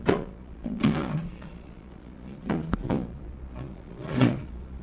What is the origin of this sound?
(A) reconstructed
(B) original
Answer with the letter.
A